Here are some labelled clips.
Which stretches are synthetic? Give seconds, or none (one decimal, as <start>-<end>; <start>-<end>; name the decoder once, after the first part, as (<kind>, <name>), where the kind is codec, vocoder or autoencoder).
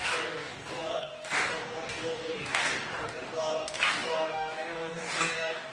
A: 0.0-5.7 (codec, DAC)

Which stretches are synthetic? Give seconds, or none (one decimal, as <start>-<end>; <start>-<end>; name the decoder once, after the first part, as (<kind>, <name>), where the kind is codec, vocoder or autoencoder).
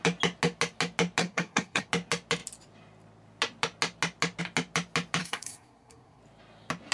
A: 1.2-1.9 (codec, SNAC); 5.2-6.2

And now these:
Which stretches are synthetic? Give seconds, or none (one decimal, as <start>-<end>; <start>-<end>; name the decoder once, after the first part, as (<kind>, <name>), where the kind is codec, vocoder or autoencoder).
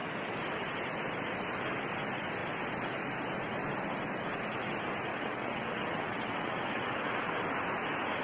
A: 5.1-7.3 (vocoder, WaveNeXt)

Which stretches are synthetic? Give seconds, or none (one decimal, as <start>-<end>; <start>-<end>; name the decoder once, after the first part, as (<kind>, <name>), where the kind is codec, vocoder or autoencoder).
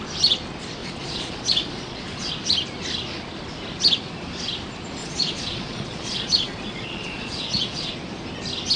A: 0.8-2.3 (vocoder, Vocos); 5.0-7.9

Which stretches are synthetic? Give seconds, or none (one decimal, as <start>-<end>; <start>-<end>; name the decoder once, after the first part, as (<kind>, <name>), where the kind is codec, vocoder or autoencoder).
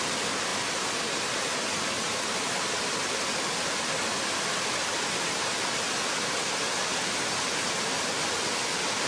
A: none